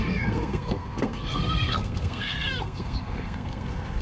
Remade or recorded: remade